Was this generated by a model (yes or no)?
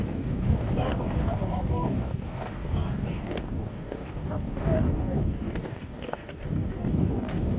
yes